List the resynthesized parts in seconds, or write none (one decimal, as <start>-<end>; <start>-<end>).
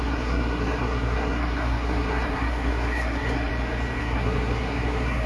0.0-3.5; 4.0-5.3